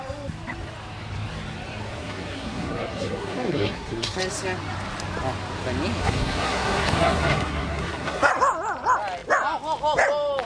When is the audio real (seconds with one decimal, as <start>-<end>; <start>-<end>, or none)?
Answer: 0.0-2.0; 4.2-6.0; 8.3-10.4